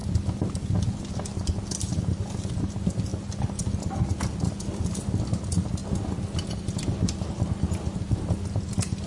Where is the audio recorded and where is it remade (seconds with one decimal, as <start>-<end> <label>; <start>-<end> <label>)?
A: 0.0-9.1 recorded

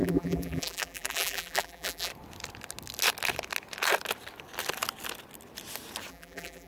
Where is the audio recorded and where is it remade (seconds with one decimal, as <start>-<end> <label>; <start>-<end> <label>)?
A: 0.0-2.1 remade; 2.1-6.1 recorded; 6.1-6.7 remade

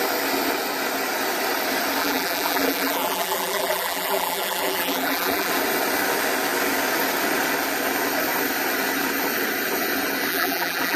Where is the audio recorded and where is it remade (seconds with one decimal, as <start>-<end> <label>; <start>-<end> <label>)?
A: 0.0-2.0 recorded; 2.0-5.5 remade; 5.5-10.3 recorded; 10.3-11.0 remade

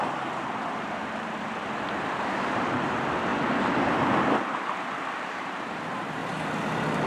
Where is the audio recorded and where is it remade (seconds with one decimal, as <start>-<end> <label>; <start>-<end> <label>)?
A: 0.0-3.3 remade; 3.3-5.3 recorded; 5.3-6.2 remade; 6.2-7.1 recorded